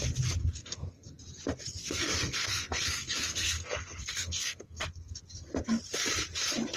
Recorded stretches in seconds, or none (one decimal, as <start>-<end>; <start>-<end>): 0.0-0.4; 1.2-1.8; 5.2-6.8